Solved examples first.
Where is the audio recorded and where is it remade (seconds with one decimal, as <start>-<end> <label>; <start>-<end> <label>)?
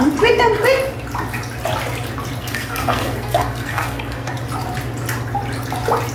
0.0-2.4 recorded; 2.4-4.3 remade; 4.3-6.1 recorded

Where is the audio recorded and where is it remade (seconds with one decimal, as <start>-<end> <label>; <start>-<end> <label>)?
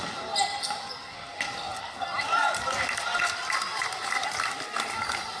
0.0-5.4 recorded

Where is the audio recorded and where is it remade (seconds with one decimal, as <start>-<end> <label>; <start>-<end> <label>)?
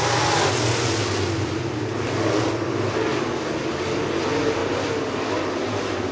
0.0-6.1 recorded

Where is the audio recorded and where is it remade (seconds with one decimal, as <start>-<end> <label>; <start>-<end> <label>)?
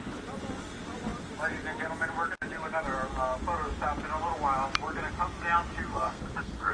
0.0-5.9 recorded; 5.9-6.7 remade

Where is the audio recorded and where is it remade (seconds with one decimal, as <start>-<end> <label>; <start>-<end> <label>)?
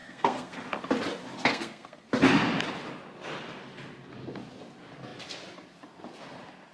0.0-0.6 remade; 0.6-1.5 recorded; 1.5-2.1 remade; 2.1-6.7 recorded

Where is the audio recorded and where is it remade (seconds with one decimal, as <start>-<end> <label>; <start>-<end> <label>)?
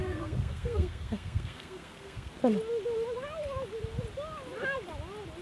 0.0-2.3 remade; 2.3-5.4 recorded